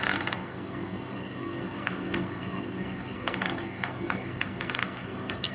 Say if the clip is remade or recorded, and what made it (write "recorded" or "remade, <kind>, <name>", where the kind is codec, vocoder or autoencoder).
remade, codec, SNAC